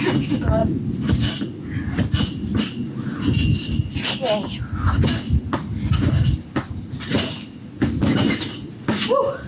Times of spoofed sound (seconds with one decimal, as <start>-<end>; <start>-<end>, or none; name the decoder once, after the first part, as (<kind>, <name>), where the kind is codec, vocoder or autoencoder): none